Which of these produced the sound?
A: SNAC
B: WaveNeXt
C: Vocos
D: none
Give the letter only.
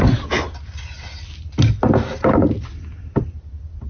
D